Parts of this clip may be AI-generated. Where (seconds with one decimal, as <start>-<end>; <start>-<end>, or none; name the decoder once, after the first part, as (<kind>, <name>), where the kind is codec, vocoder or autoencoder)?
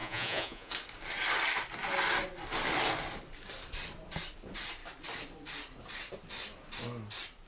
0.0-0.7 (vocoder, Vocos)